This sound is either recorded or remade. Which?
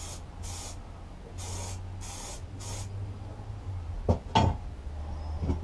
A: recorded